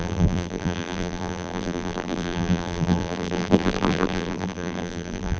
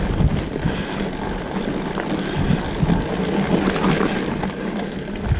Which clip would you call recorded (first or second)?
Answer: second